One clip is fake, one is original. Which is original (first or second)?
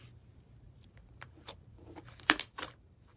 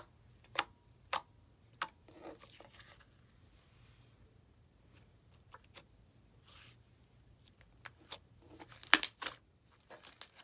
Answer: second